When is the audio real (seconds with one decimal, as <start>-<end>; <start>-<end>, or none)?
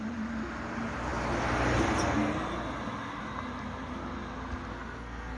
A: 0.0-4.7